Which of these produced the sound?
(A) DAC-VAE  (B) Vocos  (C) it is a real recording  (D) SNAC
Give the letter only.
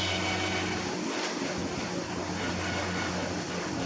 C